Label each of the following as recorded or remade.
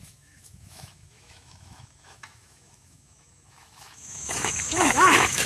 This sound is remade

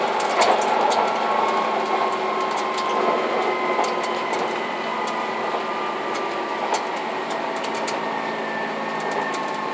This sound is recorded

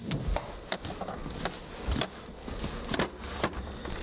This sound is remade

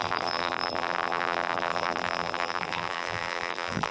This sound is remade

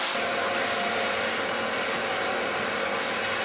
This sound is recorded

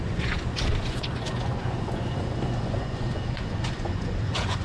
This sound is remade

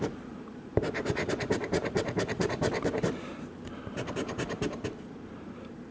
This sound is remade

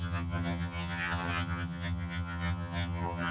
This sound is remade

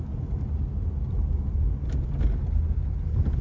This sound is recorded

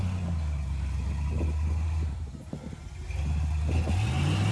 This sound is recorded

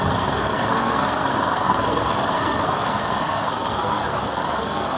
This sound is remade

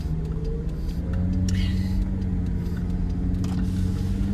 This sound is recorded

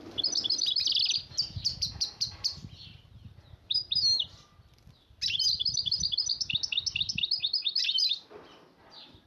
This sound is recorded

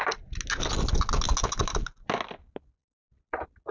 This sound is recorded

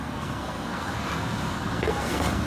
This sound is remade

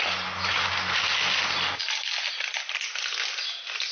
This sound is recorded